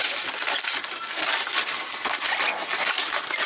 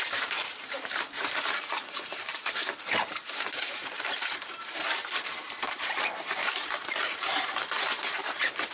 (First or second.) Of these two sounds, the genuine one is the first